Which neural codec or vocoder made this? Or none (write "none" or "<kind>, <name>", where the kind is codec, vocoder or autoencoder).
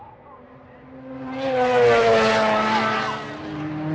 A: none